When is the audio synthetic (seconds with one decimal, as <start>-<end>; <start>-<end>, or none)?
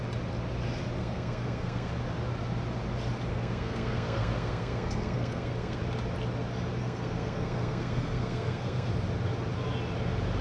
1.0-1.9; 3.3-5.8; 6.8-8.9